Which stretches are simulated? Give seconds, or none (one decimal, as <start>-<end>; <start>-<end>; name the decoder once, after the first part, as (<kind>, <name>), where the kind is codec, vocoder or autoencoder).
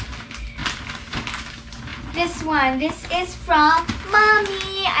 0.6-1.4 (vocoder, BigVGAN v2)